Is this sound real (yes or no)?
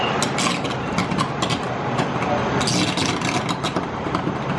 yes